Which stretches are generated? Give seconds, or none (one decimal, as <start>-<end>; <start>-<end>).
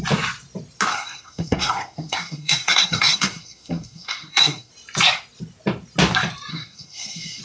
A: 0.9-4.7; 6.5-7.4